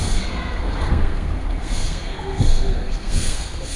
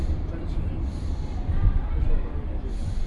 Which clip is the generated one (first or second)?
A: first